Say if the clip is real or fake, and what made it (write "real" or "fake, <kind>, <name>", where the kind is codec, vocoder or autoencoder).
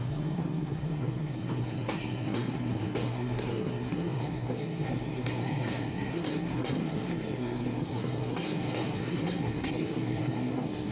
fake, codec, SNAC